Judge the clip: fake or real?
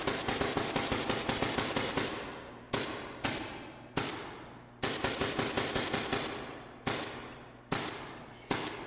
real